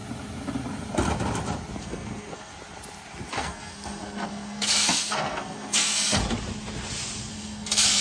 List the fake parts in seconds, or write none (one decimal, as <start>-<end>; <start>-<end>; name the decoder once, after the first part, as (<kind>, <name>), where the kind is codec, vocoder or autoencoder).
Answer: 1.8-2.5 (codec, SNAC); 3.3-6.2; 7.3-8.0